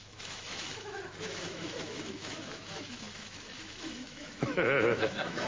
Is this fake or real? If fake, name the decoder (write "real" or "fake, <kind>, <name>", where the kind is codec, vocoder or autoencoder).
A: fake, autoencoder, DAC-VAE